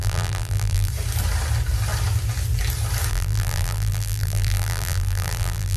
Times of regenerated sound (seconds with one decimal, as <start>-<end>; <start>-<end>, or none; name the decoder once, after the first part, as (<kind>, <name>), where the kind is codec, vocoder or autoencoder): 0.0-0.9 (vocoder, BigVGAN v2); 3.1-5.8